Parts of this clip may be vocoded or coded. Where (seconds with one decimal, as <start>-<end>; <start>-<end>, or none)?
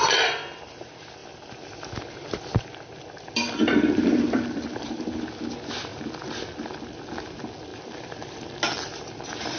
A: 1.2-5.2; 7.7-8.4